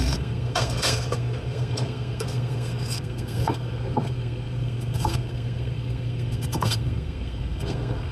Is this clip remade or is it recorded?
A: remade